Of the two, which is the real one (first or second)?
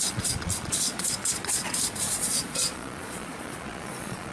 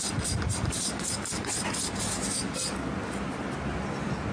second